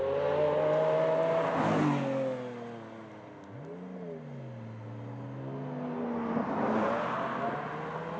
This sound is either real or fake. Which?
real